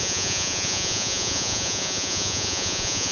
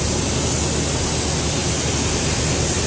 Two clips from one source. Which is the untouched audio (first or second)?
second